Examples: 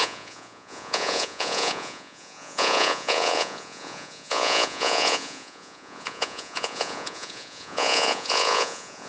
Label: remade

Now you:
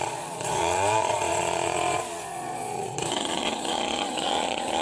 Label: remade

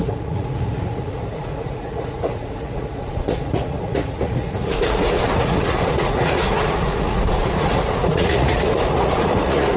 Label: remade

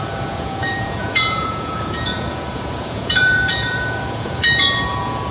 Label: remade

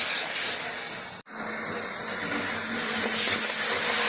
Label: recorded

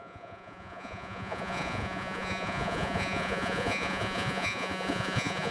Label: remade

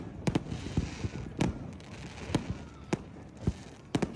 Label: recorded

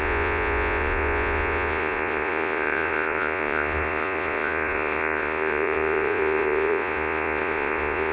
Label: remade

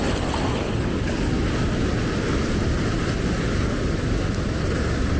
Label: recorded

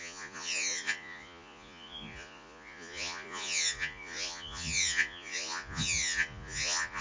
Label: remade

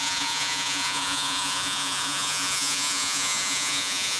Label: remade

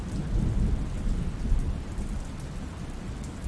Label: recorded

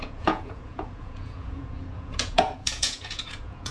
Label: remade